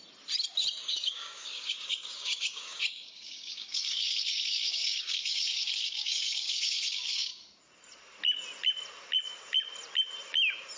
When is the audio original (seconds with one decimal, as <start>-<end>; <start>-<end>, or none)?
0.0-0.9; 7.3-10.8